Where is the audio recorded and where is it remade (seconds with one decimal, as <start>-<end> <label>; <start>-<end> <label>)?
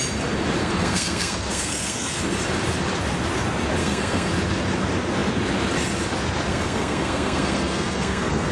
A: 0.0-0.6 recorded; 0.6-2.2 remade; 2.2-3.8 recorded; 3.8-4.3 remade; 4.3-6.5 recorded; 6.5-8.5 remade